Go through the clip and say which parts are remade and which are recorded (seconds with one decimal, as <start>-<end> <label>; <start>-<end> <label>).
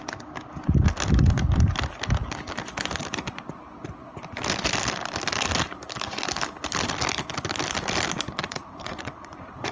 0.0-8.4 recorded; 8.4-9.7 remade